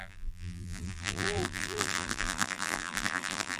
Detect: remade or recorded remade